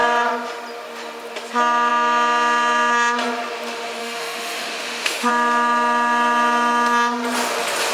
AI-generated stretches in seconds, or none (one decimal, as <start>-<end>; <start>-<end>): 4.0-5.3